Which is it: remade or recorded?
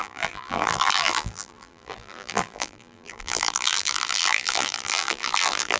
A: remade